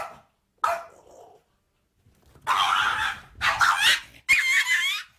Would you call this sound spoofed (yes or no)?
no